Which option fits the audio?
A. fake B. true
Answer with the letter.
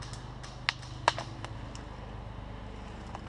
B